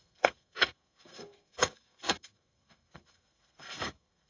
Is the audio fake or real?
fake